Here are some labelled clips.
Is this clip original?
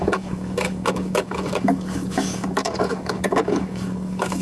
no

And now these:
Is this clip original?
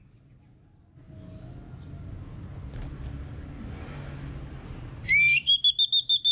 yes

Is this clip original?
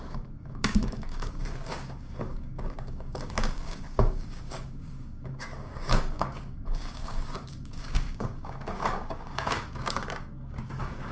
no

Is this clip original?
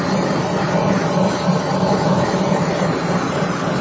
yes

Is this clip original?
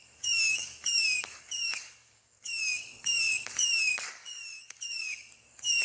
no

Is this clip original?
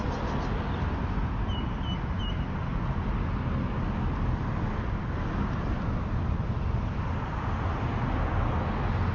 yes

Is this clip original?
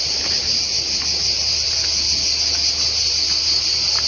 yes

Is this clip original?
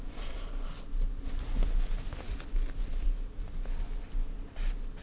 yes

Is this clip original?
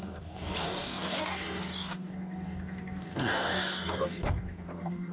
no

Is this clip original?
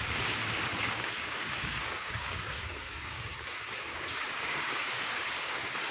no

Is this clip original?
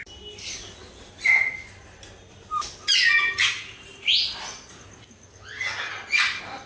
yes